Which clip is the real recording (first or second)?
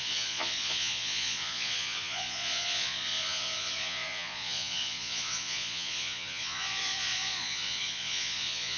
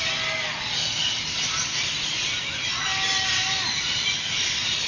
second